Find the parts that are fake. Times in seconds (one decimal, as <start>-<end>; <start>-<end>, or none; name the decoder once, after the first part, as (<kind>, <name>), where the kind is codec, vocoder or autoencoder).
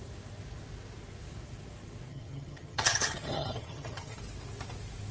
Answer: 2.1-4.2 (vocoder, HiFi-GAN)